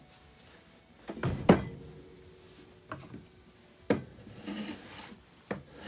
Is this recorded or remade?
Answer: recorded